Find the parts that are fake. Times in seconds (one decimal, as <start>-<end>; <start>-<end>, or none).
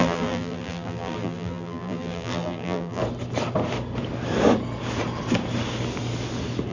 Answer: 0.0-3.0